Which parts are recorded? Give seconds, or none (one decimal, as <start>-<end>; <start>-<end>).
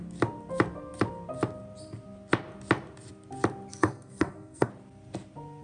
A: 0.0-3.7; 4.7-5.6